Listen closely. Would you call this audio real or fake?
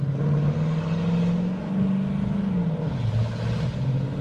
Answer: real